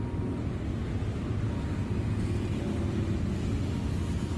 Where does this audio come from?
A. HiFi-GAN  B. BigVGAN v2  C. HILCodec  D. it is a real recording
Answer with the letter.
D